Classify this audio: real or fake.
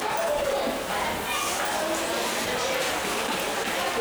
real